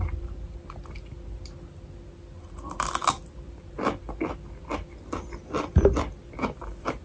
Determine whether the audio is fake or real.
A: real